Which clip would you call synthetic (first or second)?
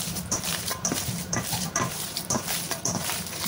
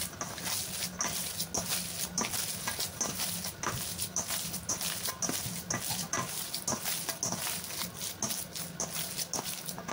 first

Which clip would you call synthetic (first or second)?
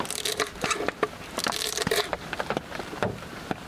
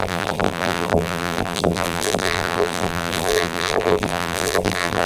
second